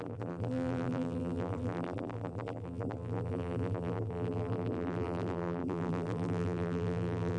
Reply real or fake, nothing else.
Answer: fake